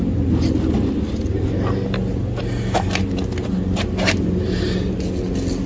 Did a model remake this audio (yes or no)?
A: no